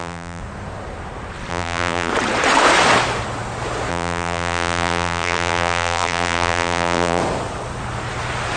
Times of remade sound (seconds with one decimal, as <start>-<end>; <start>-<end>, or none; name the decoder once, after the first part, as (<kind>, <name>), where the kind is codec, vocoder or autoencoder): 0.0-0.4 (vocoder, BigVGAN v2); 1.5-2.1; 3.9-7.2